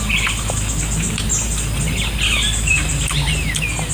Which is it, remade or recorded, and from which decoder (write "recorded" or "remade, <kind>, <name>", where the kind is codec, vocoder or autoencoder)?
recorded